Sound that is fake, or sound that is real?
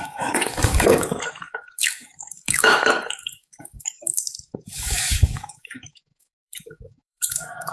fake